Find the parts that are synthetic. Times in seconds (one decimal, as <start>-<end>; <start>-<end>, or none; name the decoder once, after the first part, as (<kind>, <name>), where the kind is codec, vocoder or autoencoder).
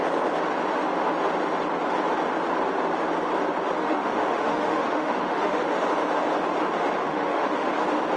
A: 3.8-5.6 (autoencoder, DAC-VAE); 7.0-7.7